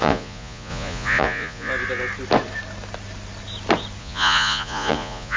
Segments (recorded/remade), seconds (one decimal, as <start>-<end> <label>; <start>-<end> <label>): 0.0-1.7 remade; 1.7-4.0 recorded; 4.0-5.4 remade